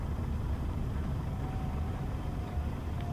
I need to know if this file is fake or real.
fake